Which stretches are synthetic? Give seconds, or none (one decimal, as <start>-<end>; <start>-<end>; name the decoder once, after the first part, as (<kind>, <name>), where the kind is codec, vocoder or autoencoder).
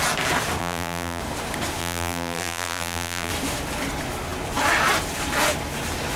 0.6-1.2 (vocoder, BigVGAN v2); 1.8-3.3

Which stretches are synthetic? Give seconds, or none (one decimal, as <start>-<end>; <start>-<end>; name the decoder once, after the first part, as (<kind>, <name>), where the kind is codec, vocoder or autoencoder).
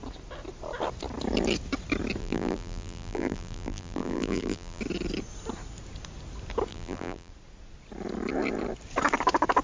2.2-4.8 (vocoder, BigVGAN v2); 6.7-7.3